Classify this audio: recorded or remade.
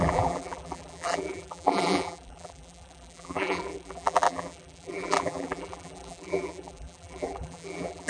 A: remade